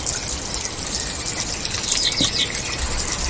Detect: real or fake real